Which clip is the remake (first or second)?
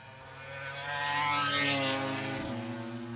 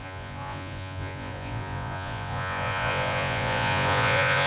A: second